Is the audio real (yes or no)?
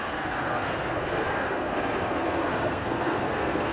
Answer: no